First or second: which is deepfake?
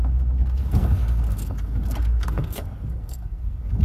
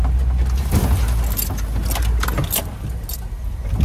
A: first